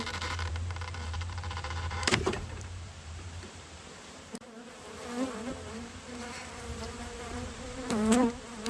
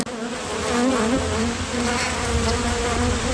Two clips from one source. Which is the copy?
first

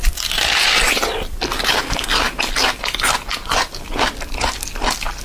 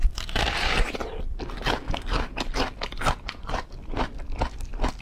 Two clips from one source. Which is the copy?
second